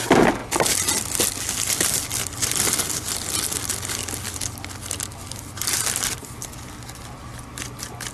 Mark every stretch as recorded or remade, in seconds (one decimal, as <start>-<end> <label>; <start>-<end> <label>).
0.0-8.1 recorded